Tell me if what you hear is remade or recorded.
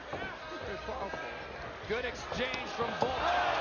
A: recorded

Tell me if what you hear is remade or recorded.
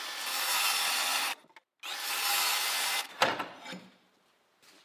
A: recorded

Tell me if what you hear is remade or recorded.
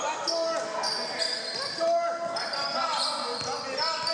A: recorded